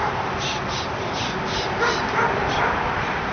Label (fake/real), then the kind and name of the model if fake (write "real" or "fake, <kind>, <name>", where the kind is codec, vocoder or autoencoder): real